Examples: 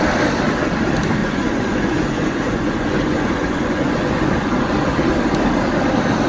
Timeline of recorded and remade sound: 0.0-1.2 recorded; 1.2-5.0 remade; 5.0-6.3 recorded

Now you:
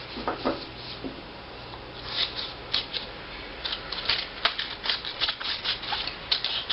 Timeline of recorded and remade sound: 0.0-5.1 recorded; 5.1-5.7 remade; 5.7-6.7 recorded

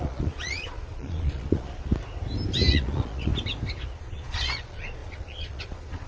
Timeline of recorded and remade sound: 0.0-1.9 remade; 1.9-2.7 recorded; 2.7-3.3 remade; 3.3-4.0 recorded; 4.0-6.1 remade

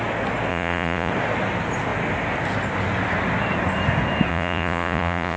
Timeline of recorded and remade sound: 0.0-0.5 recorded; 0.5-1.1 remade; 1.1-4.3 recorded; 4.3-5.4 remade

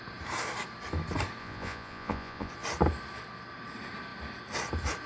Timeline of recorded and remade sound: 0.0-1.4 recorded; 1.4-2.5 remade; 2.5-5.1 recorded

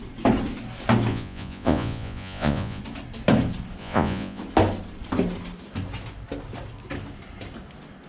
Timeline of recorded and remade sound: 0.0-1.1 recorded; 1.1-2.8 remade; 2.8-3.8 recorded; 3.8-4.4 remade; 4.4-8.1 recorded